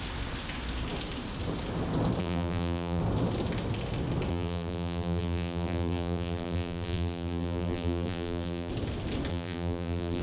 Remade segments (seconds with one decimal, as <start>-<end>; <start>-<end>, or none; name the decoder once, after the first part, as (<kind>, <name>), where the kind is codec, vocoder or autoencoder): 2.2-3.0 (vocoder, BigVGAN v2); 4.3-8.7; 9.3-10.2